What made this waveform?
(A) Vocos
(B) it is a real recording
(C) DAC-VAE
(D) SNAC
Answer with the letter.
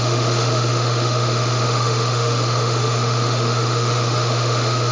C